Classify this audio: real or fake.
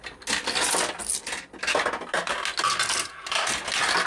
real